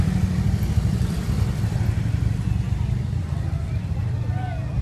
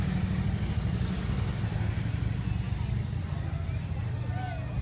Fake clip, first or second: first